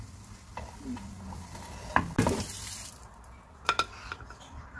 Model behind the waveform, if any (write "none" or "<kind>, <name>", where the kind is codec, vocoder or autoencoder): none